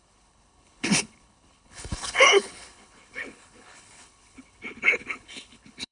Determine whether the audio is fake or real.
fake